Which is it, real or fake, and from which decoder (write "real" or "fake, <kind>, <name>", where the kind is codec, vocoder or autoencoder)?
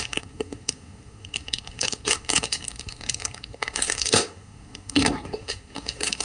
fake, codec, SNAC